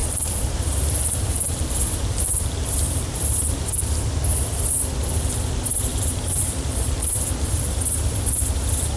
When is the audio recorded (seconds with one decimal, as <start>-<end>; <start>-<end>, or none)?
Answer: 3.3-5.9; 7.3-9.0